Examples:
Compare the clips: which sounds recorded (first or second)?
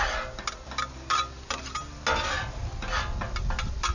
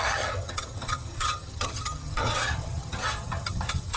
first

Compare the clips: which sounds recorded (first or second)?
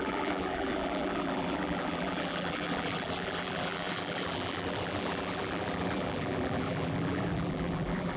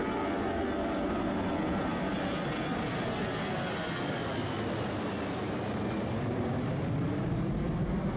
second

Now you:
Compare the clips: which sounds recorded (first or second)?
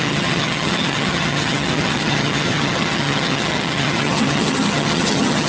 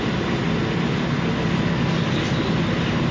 second